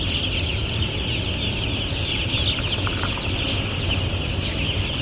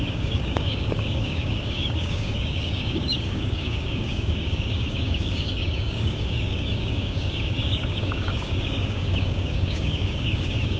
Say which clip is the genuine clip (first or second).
first